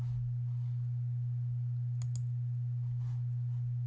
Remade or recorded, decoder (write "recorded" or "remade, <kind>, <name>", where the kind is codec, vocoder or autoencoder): recorded